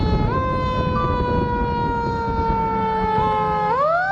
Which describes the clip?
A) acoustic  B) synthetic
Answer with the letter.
A